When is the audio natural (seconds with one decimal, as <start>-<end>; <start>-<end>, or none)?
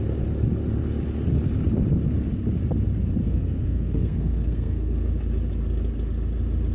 0.0-3.2; 5.1-6.7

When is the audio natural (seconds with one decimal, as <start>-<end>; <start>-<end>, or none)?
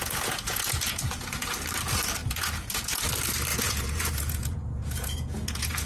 1.5-2.2; 3.0-3.5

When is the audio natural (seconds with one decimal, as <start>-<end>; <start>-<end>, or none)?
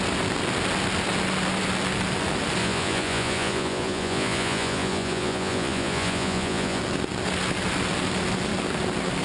0.0-2.6; 6.8-9.2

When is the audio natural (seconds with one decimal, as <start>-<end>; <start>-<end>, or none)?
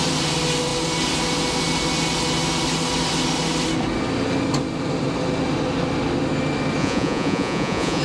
0.0-6.8